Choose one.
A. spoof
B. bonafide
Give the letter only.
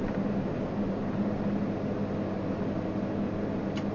B